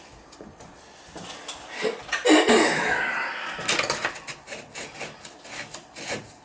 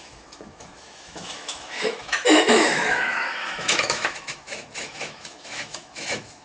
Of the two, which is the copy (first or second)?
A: second